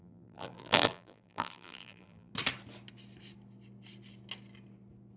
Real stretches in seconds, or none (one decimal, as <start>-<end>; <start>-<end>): 2.3-5.2